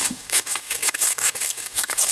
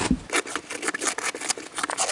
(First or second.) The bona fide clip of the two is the second